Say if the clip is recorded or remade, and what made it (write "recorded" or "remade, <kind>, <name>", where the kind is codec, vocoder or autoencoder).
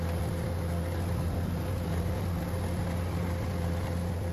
recorded